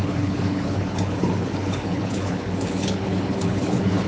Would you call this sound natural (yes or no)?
no